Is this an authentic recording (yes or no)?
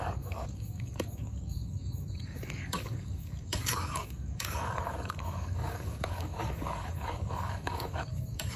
no